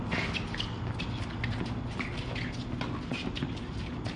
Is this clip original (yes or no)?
yes